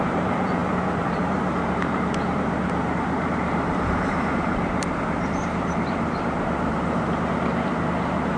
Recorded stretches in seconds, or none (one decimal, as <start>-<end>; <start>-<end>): none